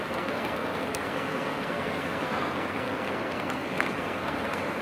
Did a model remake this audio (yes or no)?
yes